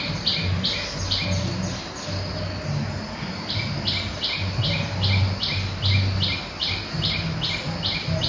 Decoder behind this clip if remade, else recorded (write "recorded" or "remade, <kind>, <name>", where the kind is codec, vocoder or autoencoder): recorded